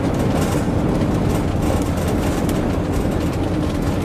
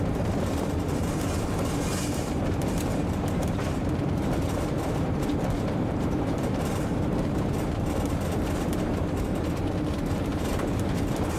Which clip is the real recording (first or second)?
first